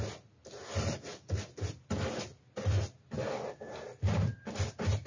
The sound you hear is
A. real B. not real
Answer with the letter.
A